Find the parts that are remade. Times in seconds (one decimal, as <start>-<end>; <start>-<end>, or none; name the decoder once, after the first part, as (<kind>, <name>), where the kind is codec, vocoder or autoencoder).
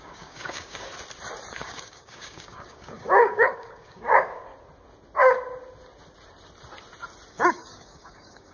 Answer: 0.0-0.9 (codec, DAC); 1.5-4.5; 7.3-8.5